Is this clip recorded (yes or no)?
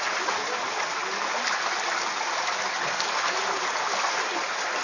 yes